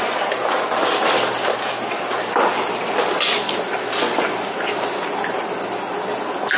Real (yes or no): yes